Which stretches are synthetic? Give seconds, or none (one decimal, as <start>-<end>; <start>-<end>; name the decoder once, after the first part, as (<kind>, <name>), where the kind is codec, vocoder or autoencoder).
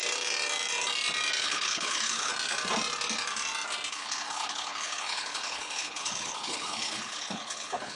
1.4-2.3 (codec, HILCodec); 3.9-8.0